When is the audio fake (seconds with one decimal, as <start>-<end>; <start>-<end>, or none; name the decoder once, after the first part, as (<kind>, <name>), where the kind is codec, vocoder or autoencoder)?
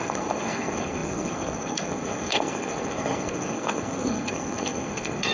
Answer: 0.0-5.3 (codec, SNAC)